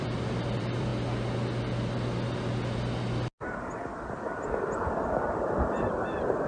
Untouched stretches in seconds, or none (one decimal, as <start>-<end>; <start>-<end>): 0.9-3.9